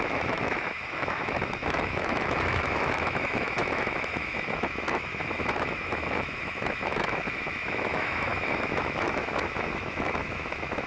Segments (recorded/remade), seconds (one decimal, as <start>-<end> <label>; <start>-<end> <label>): 0.0-10.9 remade